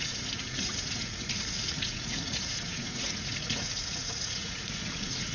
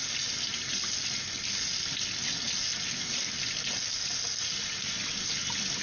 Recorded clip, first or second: second